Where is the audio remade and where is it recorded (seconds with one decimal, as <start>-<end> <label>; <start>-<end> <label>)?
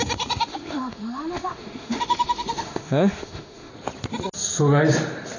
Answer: 0.0-0.5 recorded; 0.5-3.7 remade; 3.7-5.4 recorded